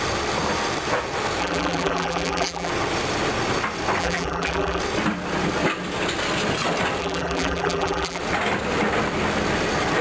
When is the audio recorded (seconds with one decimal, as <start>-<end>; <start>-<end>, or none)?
0.0-1.4; 2.7-4.0; 4.8-7.0; 8.2-10.0